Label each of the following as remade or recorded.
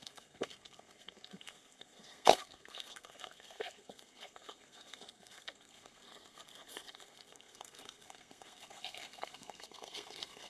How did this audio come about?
remade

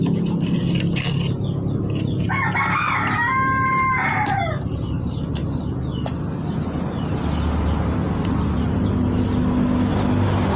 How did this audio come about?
recorded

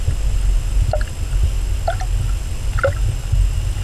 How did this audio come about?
recorded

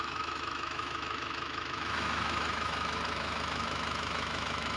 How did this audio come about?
remade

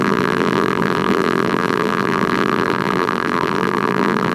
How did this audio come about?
remade